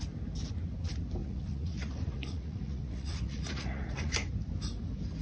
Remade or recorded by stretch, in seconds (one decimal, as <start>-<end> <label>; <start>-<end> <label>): 0.0-1.2 recorded; 1.2-4.1 remade; 4.1-5.2 recorded